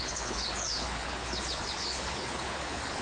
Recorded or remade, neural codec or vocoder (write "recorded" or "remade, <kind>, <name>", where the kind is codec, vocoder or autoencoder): remade, codec, HILCodec